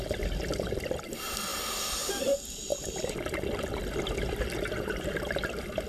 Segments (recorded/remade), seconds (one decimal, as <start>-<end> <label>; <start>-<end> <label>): 0.0-5.9 recorded